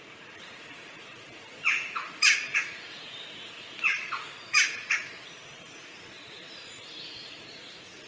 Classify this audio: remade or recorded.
remade